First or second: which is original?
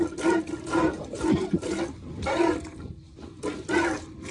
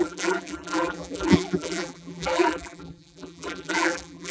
first